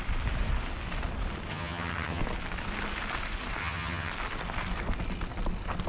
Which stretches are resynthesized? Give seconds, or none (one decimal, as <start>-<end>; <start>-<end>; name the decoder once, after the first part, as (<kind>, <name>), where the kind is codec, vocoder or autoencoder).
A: 1.5-2.2 (vocoder, HiFi-GAN); 3.6-4.1